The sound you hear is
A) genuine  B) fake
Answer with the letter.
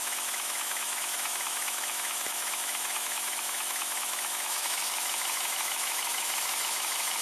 B